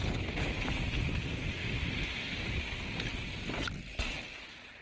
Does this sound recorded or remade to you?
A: recorded